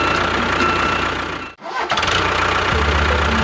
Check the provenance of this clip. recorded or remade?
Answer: recorded